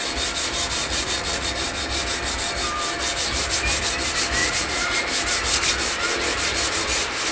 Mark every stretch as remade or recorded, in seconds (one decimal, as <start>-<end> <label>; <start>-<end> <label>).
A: 0.0-0.8 recorded; 0.8-1.5 remade; 1.5-4.4 recorded; 4.4-5.0 remade; 5.0-7.3 recorded